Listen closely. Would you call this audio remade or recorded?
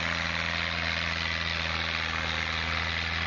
recorded